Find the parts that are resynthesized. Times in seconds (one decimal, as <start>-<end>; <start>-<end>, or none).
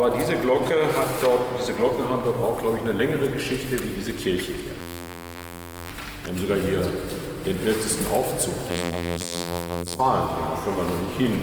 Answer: 4.8-5.9; 8.7-10.0